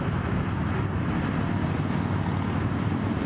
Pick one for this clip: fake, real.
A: real